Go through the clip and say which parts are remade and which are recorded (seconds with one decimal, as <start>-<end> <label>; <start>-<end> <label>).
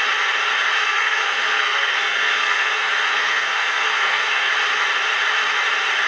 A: 0.0-0.8 recorded; 0.8-4.5 remade; 4.5-6.1 recorded